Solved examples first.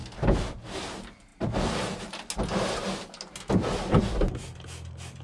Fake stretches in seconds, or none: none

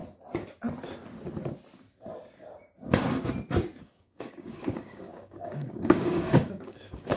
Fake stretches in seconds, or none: 3.8-7.2 (codec, DAC)